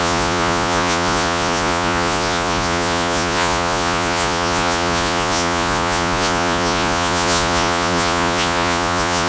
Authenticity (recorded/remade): remade